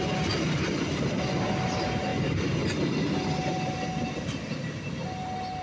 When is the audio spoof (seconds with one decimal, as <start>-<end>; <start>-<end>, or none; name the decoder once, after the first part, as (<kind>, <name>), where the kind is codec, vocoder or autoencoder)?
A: none